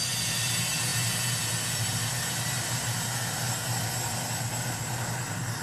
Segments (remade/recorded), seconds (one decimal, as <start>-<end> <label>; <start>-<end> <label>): 0.0-5.6 recorded